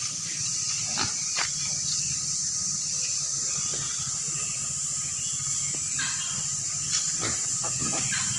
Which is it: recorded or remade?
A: recorded